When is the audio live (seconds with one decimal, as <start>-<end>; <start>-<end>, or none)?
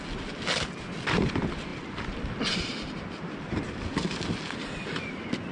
0.0-5.5